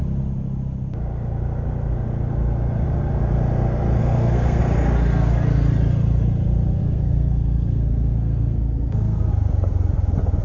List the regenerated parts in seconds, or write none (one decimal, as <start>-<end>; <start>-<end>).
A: 4.0-4.6; 6.8-9.3